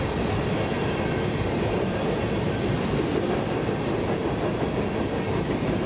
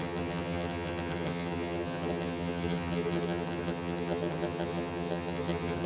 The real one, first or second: first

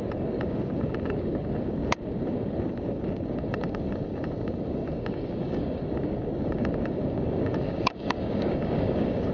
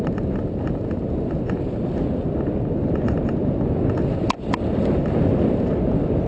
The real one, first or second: second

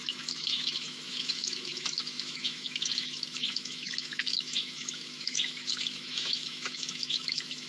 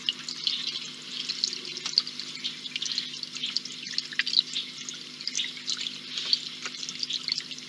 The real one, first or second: second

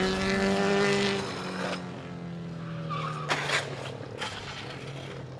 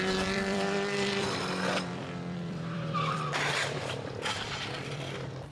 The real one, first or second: first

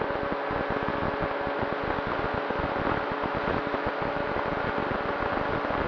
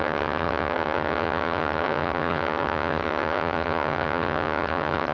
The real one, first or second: first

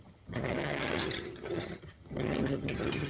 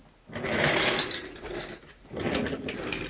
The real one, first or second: second